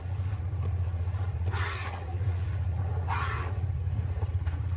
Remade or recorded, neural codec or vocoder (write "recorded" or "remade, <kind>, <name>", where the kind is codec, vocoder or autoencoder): remade, vocoder, Vocos